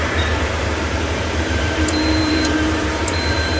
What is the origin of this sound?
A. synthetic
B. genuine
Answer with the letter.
A